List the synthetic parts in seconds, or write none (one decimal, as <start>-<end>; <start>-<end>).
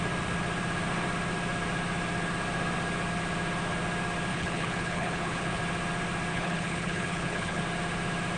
4.3-5.6; 6.3-7.6